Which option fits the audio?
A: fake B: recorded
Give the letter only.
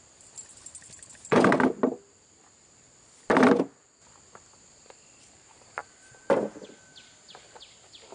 B